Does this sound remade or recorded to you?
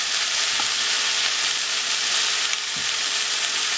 recorded